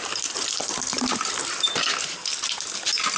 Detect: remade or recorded recorded